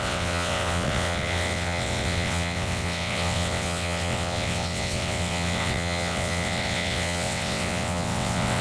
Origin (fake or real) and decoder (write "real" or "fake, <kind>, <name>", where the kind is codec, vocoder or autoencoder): fake, vocoder, WaveNeXt